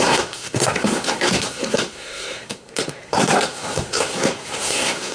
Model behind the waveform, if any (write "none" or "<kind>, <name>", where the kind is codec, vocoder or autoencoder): codec, SNAC